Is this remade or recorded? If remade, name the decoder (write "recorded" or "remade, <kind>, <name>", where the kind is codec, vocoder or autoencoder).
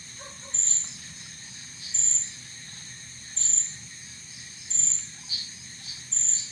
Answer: recorded